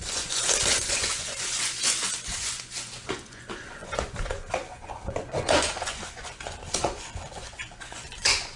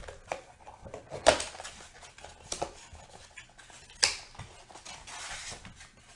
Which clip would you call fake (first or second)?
first